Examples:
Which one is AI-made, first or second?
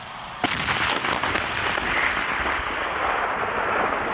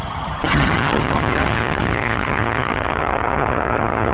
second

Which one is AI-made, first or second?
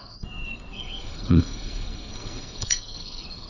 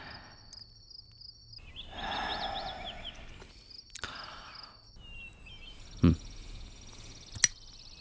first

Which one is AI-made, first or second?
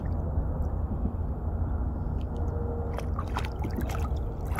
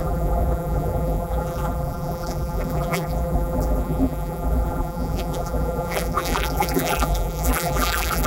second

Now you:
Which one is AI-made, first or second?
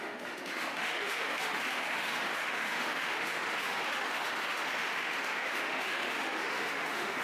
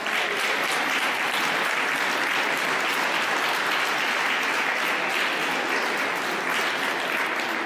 first